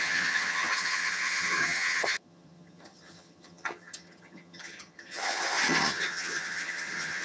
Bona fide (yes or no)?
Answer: no